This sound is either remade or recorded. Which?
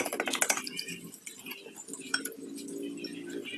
recorded